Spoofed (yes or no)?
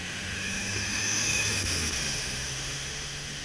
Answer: yes